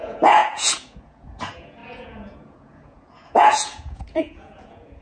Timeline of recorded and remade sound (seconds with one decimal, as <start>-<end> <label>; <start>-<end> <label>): 0.0-5.0 remade